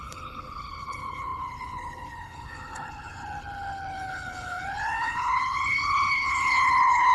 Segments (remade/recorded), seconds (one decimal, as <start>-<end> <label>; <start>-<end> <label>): 0.0-7.1 remade